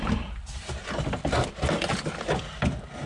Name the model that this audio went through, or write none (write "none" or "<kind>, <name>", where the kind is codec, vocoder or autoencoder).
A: none